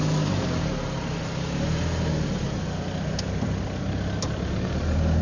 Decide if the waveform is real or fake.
real